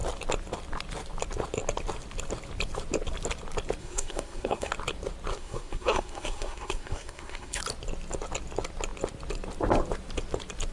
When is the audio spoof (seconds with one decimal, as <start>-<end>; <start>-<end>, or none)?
3.8-4.7; 5.3-7.6

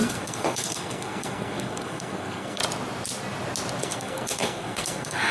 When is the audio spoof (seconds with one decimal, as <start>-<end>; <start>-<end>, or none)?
0.0-2.6; 3.8-5.3

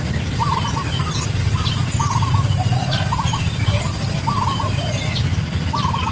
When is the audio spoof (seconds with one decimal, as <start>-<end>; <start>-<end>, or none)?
none

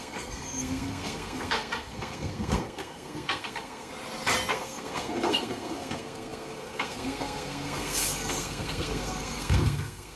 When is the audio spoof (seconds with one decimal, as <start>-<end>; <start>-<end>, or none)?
0.0-3.9; 4.5-10.2

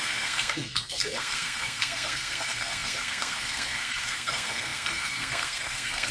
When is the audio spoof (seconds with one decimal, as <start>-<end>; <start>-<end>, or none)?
0.0-6.1

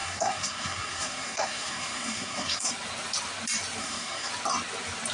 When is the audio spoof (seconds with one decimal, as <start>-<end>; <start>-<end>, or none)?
0.0-2.7; 3.8-4.3